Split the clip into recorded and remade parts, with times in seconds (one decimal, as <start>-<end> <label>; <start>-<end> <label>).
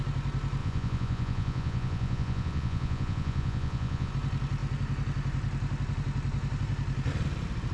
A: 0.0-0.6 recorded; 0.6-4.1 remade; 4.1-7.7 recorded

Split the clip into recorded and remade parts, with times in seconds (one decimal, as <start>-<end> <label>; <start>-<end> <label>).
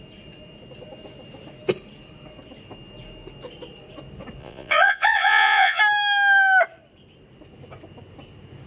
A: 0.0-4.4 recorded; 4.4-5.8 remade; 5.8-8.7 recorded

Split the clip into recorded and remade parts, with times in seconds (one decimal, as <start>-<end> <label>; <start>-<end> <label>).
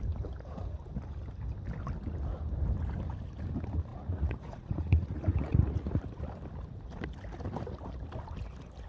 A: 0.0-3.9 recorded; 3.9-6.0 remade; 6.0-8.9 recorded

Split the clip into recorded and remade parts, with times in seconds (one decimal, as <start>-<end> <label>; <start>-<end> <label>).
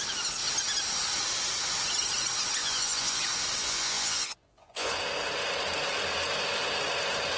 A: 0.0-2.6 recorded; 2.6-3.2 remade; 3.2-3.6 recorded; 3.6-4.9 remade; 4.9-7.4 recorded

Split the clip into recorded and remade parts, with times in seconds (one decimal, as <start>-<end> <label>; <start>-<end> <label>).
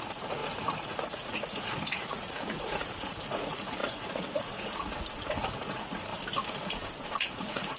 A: 0.0-6.1 remade; 6.1-6.6 recorded; 6.6-7.8 remade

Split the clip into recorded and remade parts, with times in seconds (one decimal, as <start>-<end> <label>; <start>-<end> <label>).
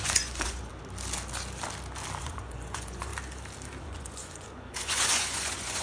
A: 0.0-0.7 remade; 0.7-2.2 recorded; 2.2-3.1 remade; 3.1-3.8 recorded; 3.8-5.8 remade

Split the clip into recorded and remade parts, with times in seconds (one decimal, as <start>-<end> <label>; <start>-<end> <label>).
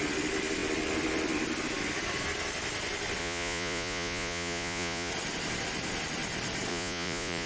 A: 0.0-3.2 recorded; 3.2-5.1 remade; 5.1-6.7 recorded; 6.7-7.5 remade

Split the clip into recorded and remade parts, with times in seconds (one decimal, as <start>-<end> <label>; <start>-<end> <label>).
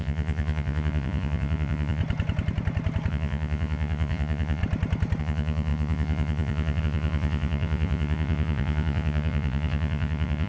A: 0.0-2.0 remade; 2.0-3.1 recorded; 3.1-4.6 remade; 4.6-5.2 recorded; 5.2-10.5 remade